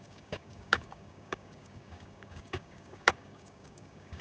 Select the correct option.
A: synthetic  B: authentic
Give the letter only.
A